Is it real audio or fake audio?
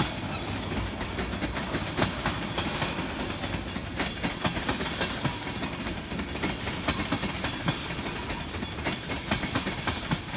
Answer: real